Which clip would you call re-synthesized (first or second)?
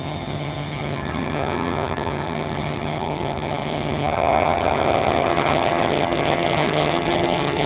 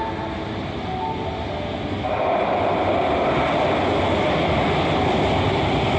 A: first